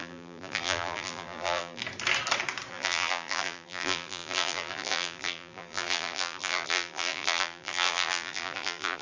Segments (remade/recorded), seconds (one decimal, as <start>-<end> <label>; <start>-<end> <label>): 0.0-1.8 remade; 1.8-2.7 recorded; 2.7-9.0 remade